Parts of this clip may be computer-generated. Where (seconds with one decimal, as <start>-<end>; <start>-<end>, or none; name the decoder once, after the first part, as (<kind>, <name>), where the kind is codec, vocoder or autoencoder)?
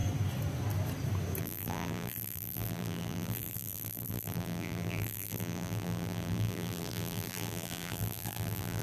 1.4-8.8 (vocoder, BigVGAN v2)